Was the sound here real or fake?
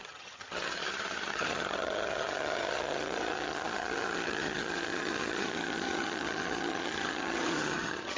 fake